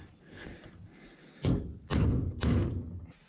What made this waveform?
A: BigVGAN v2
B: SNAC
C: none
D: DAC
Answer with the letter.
C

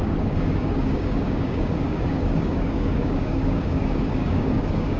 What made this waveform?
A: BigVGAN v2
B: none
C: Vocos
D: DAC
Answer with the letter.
D